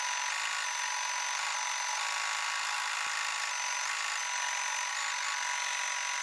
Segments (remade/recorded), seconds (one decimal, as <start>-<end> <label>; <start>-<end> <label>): 0.0-6.2 recorded